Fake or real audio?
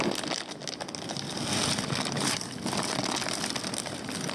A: real